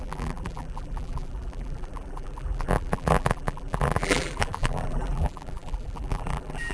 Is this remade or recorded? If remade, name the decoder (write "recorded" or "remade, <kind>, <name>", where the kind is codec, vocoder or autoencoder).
remade, vocoder, BigVGAN v2